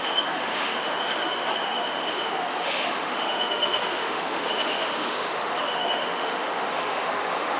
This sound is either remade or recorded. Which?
remade